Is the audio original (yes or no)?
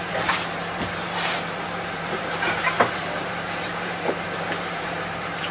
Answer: no